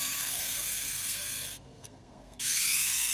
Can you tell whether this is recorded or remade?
remade